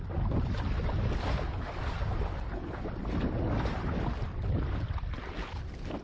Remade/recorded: recorded